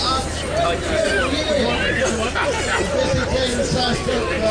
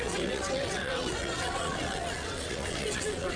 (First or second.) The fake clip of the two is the second